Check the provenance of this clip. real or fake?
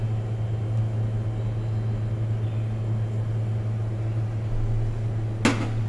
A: real